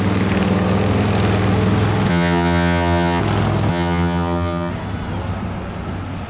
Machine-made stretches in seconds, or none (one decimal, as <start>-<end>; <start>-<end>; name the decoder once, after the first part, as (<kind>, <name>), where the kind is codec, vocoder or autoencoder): 2.1-3.2 (vocoder, HiFi-GAN); 3.7-4.7